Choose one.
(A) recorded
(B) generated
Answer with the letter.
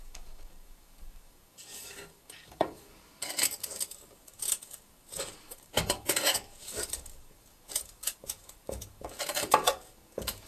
B